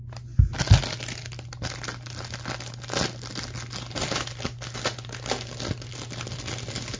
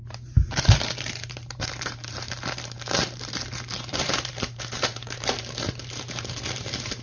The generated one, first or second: second